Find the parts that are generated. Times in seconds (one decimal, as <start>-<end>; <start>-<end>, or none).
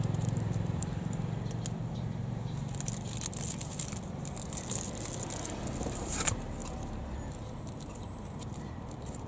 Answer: 0.0-1.2; 5.8-6.6; 7.9-9.3